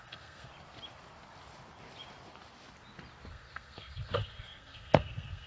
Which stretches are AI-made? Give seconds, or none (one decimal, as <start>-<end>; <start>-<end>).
0.0-0.5; 3.3-5.5